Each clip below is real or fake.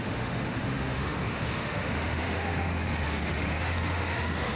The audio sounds fake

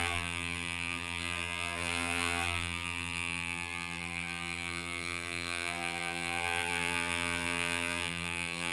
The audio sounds fake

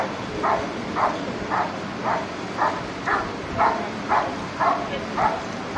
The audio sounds real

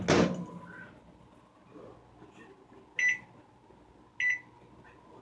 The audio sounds real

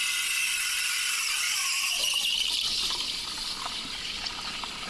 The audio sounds real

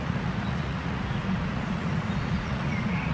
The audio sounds fake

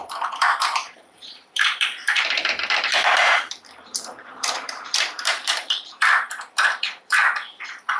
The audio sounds fake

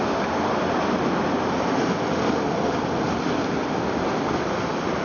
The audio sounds real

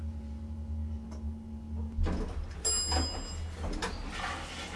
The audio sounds real